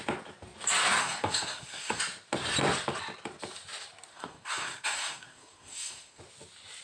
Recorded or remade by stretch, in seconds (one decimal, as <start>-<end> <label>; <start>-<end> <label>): 0.0-1.0 recorded; 1.0-2.0 remade; 2.0-4.1 recorded; 4.1-6.2 remade; 6.2-6.8 recorded